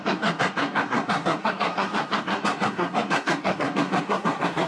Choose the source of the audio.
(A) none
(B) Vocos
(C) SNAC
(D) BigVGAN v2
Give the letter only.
C